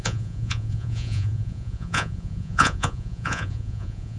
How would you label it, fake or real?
fake